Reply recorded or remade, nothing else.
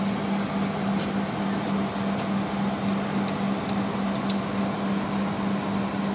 recorded